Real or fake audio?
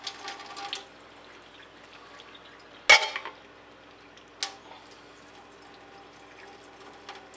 real